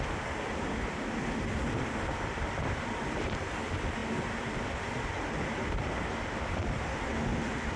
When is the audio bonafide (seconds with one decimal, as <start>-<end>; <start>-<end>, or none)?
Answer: 0.0-7.8